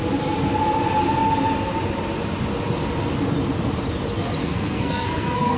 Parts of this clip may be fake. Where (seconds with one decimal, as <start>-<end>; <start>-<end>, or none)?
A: 4.4-5.6